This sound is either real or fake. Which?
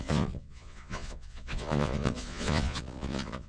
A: fake